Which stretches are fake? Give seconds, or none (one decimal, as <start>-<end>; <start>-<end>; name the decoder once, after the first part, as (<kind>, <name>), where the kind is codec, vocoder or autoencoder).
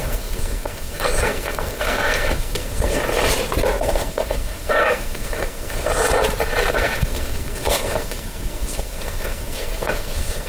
0.0-3.0 (codec, SNAC); 3.8-5.9; 6.7-10.5